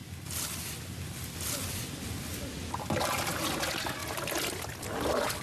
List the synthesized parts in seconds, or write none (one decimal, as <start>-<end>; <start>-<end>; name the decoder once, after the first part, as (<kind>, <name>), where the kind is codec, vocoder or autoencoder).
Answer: none